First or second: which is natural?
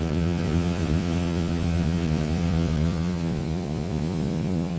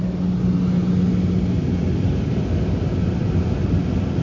second